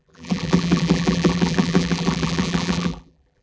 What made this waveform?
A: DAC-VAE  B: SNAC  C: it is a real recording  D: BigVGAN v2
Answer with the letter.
D